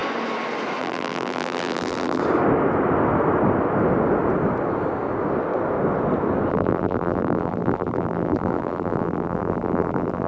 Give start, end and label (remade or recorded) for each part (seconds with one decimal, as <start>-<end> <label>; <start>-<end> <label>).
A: 0.0-0.8 recorded; 0.8-2.2 remade; 2.2-6.5 recorded; 6.5-10.3 remade